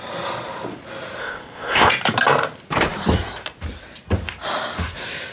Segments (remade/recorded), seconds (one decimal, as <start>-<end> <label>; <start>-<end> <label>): 0.0-1.2 recorded; 1.2-1.9 remade; 1.9-5.3 recorded